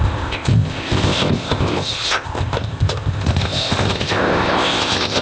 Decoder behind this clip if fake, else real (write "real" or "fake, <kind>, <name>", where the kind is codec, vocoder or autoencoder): fake, codec, ZipCodec